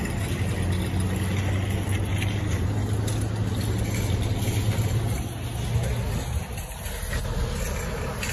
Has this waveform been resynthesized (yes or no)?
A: no